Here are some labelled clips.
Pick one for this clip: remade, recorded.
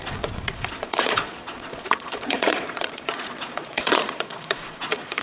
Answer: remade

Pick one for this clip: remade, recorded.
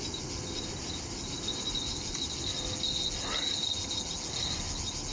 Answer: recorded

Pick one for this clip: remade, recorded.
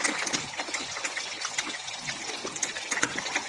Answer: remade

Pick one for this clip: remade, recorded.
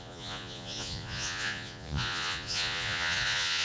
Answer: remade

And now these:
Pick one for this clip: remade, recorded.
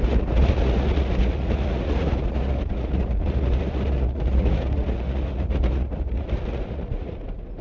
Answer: remade